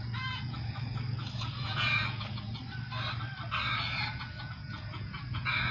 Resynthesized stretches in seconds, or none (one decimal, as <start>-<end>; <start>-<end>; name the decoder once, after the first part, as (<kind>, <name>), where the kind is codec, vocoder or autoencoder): 0.0-2.6 (vocoder, Vocos); 4.1-5.7